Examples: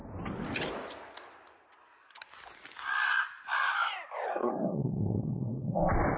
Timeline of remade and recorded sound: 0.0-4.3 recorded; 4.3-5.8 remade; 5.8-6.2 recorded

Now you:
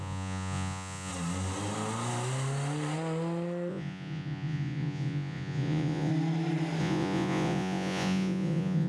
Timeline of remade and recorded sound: 0.0-1.1 remade; 1.1-3.7 recorded; 3.7-6.1 remade; 6.1-6.8 recorded; 6.8-8.9 remade

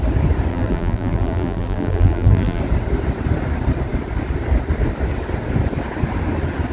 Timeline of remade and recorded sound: 0.0-0.5 recorded; 0.5-2.6 remade; 2.6-6.7 recorded

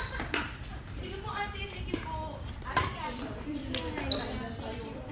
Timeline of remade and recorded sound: 0.0-0.7 recorded; 0.7-3.7 remade; 3.7-5.1 recorded

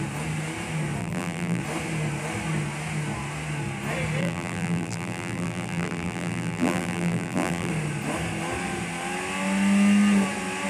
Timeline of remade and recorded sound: 0.0-1.0 recorded; 1.0-1.6 remade; 1.6-4.2 recorded; 4.2-7.7 remade; 7.7-10.7 recorded